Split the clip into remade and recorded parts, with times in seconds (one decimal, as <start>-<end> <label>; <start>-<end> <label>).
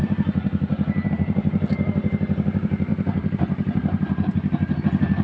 0.0-2.9 recorded; 2.9-4.8 remade; 4.8-5.2 recorded